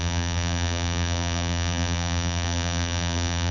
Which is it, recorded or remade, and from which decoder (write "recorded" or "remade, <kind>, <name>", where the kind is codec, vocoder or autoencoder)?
remade, vocoder, BigVGAN v2